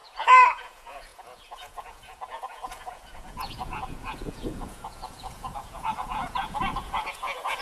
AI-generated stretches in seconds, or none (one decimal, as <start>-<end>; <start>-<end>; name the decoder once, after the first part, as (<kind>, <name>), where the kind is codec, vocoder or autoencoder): 0.0-7.6 (vocoder, Vocos)